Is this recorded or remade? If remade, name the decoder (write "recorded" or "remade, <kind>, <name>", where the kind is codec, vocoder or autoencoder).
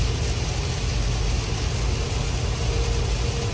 recorded